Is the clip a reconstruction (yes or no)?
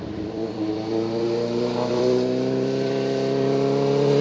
yes